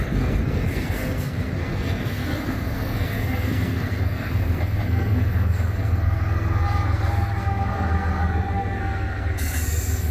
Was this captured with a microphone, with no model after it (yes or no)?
no